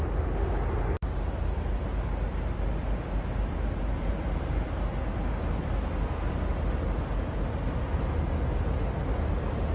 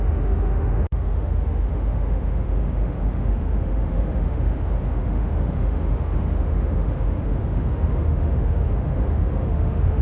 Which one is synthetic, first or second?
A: second